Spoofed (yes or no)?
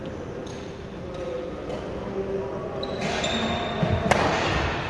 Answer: no